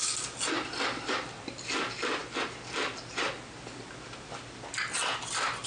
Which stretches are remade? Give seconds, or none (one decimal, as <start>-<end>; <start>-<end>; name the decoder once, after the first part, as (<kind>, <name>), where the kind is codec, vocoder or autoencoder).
none